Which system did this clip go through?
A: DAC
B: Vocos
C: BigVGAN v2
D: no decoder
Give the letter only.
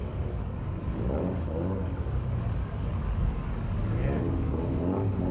A